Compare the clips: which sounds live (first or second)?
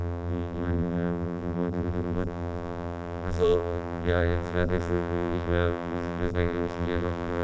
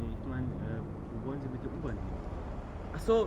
second